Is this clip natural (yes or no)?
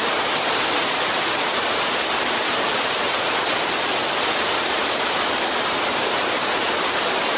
yes